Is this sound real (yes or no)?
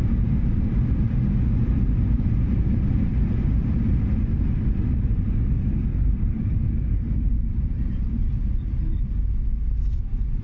yes